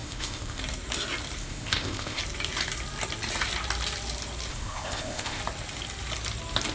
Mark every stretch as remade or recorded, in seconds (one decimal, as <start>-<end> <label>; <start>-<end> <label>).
0.0-0.6 remade; 0.6-1.4 recorded; 1.4-2.2 remade; 2.2-4.5 recorded; 4.5-5.4 remade; 5.4-6.7 recorded